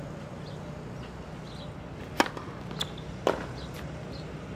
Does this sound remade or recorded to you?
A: recorded